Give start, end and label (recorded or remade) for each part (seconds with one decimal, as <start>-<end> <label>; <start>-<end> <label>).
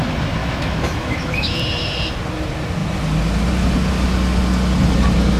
0.0-0.4 recorded; 0.4-1.6 remade; 1.6-5.4 recorded